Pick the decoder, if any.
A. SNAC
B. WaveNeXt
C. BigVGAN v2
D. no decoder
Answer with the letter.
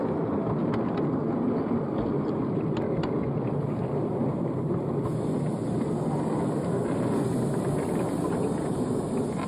D